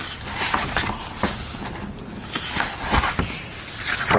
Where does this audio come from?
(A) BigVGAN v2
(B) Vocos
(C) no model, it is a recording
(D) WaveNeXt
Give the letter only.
C